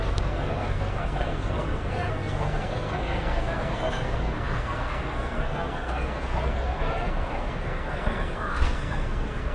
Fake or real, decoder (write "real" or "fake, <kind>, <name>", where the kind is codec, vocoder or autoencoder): fake, codec, SNAC